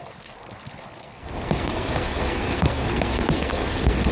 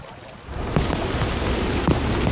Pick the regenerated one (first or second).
first